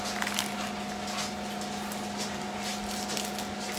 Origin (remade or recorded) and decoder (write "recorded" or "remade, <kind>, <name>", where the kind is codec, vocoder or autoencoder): recorded